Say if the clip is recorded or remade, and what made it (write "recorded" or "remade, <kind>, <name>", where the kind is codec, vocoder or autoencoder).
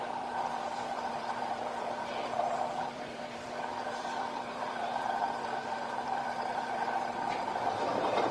remade, vocoder, BigVGAN v2